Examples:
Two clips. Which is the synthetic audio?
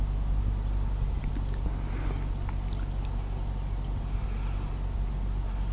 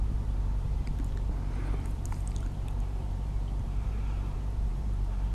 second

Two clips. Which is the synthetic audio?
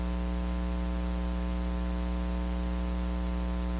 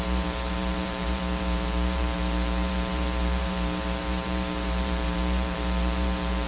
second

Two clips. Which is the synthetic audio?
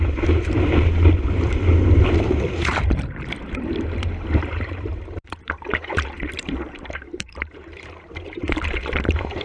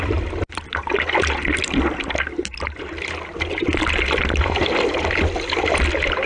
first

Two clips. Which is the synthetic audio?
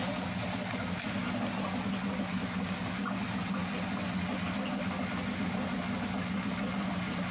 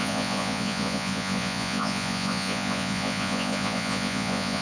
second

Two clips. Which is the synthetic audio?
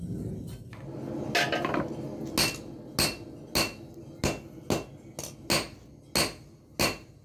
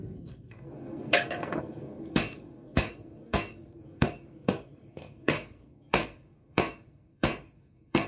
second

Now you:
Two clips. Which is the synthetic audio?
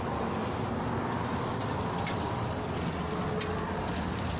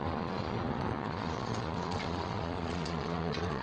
second